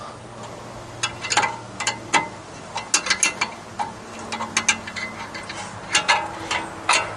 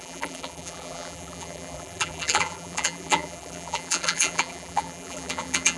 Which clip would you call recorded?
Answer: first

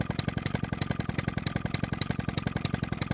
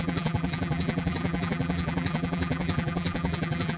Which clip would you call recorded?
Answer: first